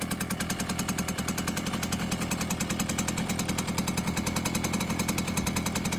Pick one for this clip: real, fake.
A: real